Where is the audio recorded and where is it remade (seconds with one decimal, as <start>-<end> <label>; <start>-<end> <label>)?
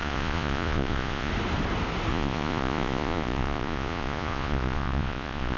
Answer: 0.0-1.3 remade; 1.3-2.1 recorded; 2.1-5.6 remade